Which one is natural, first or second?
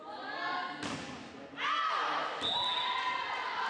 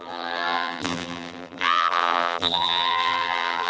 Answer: first